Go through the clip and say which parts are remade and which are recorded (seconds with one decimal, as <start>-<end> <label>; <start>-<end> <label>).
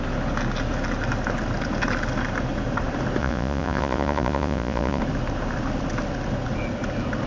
0.0-3.2 recorded; 3.2-5.0 remade; 5.0-7.3 recorded